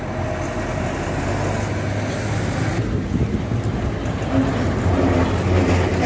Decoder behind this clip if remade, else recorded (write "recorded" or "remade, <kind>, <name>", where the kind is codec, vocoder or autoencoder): recorded